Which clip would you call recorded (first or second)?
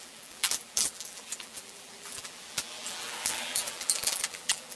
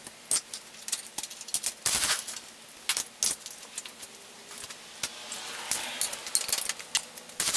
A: second